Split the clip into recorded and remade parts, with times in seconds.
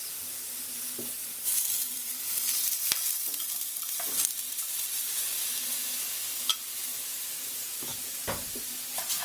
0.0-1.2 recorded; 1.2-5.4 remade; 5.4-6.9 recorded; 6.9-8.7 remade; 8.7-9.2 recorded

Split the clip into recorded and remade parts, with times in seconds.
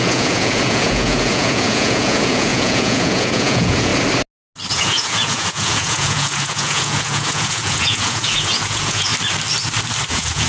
0.0-3.9 remade; 3.9-4.7 recorded; 4.7-9.1 remade; 9.1-10.1 recorded; 10.1-10.5 remade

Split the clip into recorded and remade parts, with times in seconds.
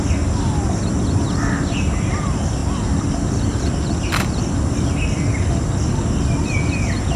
0.0-7.2 recorded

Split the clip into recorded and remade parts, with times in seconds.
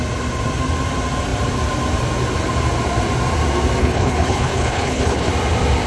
0.0-3.8 recorded; 3.8-5.3 remade; 5.3-5.9 recorded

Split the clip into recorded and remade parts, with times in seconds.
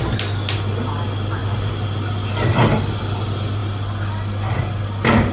0.0-5.3 recorded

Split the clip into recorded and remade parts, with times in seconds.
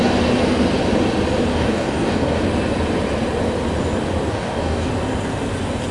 0.0-1.5 recorded; 1.5-2.4 remade; 2.4-4.3 recorded; 4.3-4.9 remade; 4.9-5.9 recorded